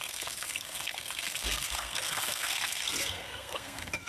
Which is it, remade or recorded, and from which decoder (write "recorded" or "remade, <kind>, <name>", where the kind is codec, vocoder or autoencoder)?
remade, codec, SNAC